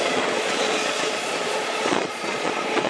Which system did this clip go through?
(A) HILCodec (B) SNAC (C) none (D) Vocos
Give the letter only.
D